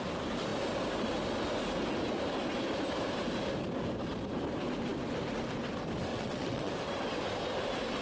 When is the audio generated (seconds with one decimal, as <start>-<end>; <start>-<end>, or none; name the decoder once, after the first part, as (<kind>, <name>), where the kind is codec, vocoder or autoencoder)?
6.1-6.7 (vocoder, WaveNeXt)